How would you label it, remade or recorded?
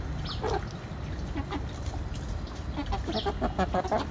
recorded